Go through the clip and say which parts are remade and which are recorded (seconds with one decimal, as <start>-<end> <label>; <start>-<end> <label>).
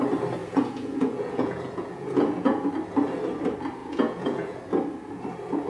0.0-0.4 recorded; 0.4-2.7 remade; 2.7-3.8 recorded; 3.8-4.6 remade; 4.6-5.7 recorded